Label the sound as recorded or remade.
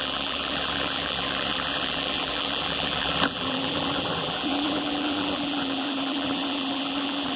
remade